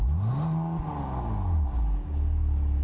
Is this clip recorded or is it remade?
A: recorded